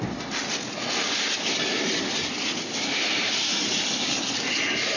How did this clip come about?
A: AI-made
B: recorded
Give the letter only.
B